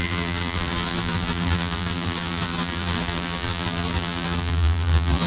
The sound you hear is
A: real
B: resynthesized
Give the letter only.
B